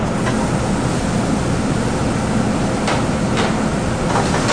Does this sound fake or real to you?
real